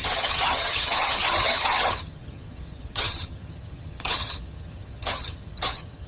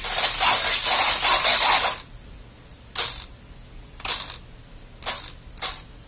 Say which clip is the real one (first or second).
second